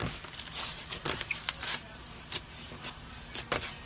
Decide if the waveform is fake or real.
real